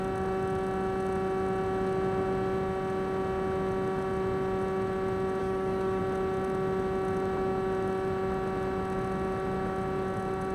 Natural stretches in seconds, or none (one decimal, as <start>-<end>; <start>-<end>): 0.0-5.4; 6.0-10.5